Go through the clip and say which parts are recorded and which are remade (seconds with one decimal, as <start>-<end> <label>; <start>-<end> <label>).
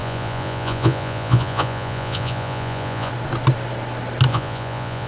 0.0-3.1 remade; 3.1-4.3 recorded; 4.3-5.1 remade